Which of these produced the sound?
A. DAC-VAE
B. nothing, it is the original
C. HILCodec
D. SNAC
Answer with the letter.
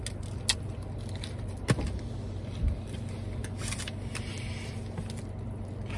B